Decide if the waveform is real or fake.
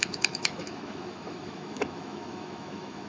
fake